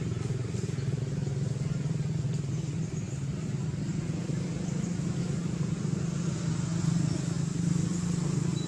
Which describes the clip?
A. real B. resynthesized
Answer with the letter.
A